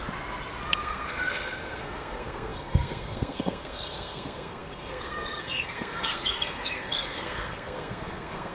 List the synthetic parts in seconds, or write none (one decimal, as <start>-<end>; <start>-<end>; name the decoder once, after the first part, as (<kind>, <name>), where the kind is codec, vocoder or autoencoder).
0.8-8.5 (codec, SNAC)